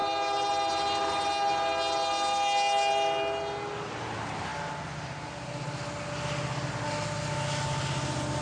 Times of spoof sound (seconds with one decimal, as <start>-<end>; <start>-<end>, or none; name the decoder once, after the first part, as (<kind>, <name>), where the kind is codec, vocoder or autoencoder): none